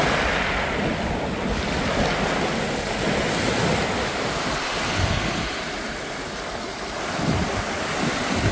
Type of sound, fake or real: real